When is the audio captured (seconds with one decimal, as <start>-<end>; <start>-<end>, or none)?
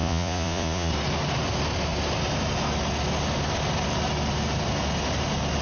0.9-5.6